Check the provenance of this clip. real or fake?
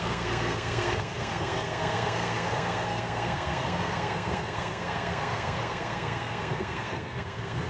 fake